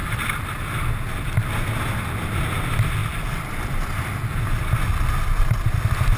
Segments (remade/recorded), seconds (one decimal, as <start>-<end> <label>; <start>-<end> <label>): 0.0-0.6 remade; 0.6-6.2 recorded

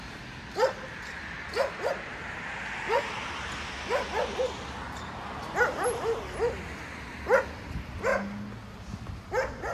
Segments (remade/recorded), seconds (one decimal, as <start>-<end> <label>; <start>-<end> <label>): 0.0-9.7 recorded

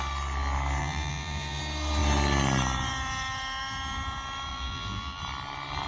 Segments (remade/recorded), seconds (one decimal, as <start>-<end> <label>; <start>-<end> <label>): 0.0-0.8 recorded; 0.8-1.6 remade; 1.6-4.5 recorded; 4.5-5.2 remade; 5.2-5.9 recorded

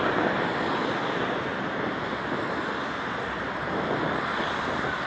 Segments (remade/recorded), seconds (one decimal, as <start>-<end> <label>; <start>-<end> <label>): 0.0-5.1 recorded

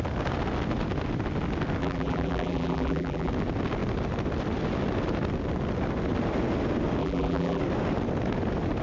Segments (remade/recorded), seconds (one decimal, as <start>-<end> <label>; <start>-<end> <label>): 0.0-1.8 recorded; 1.8-3.3 remade; 3.3-7.0 recorded; 7.0-7.6 remade; 7.6-8.8 recorded

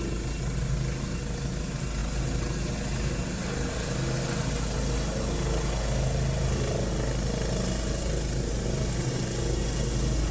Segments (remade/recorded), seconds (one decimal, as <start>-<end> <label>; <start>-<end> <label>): 0.0-10.3 recorded